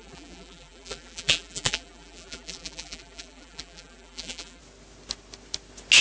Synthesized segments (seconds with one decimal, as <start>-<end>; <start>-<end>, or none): 0.0-4.6